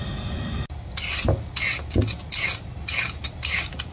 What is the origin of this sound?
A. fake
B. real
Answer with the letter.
B